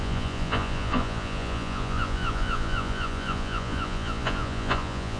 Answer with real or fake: fake